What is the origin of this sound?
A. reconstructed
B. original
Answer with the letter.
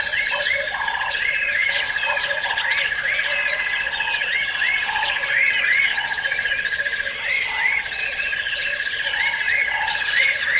A